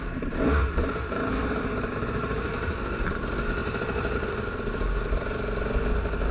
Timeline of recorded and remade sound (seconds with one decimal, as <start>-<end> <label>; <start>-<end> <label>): 0.0-0.6 recorded; 0.6-2.7 remade; 2.7-3.6 recorded; 3.6-4.3 remade; 4.3-6.3 recorded

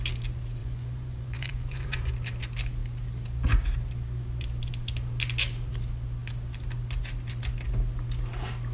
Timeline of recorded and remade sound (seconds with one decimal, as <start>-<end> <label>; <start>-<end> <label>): 0.0-0.6 recorded; 0.6-2.1 remade; 2.1-8.7 recorded

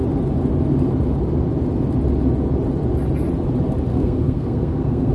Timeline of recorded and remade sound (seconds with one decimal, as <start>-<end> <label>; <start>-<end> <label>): 0.0-3.9 recorded; 3.9-5.1 remade

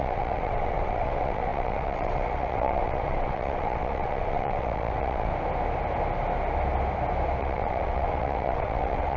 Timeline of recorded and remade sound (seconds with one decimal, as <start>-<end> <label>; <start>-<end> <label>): 0.0-5.3 remade; 5.3-7.4 recorded; 7.4-9.2 remade

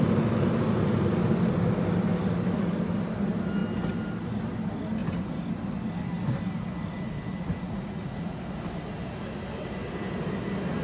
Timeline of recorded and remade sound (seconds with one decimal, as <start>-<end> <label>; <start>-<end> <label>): 0.0-7.3 recorded; 7.3-8.4 remade; 8.4-10.8 recorded